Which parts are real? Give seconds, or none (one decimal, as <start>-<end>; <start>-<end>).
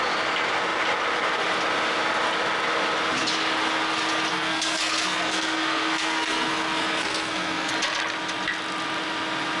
0.0-4.3; 7.7-9.6